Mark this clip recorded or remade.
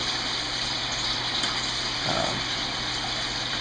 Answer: remade